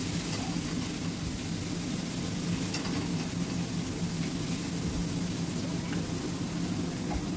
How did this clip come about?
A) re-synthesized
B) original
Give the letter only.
B